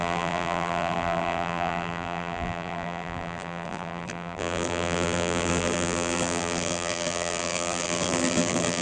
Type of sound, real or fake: fake